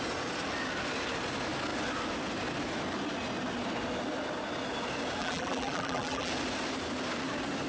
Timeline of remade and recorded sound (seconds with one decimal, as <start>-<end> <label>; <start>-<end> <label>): 0.0-5.2 recorded; 5.2-6.3 remade; 6.3-7.7 recorded